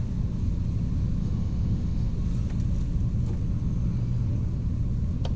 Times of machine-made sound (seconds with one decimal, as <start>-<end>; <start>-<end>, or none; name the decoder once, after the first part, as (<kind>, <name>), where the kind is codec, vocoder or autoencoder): 1.2-2.1 (autoencoder, DAC-VAE)